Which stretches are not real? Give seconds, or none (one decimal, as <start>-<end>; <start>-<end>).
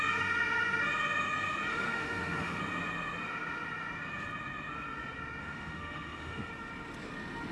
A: 1.7-2.6; 5.4-6.5